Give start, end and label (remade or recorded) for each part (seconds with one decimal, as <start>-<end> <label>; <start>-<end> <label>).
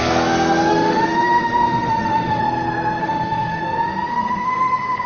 0.0-0.7 recorded; 0.7-2.4 remade; 2.4-3.0 recorded; 3.0-3.6 remade; 3.6-4.1 recorded; 4.1-5.1 remade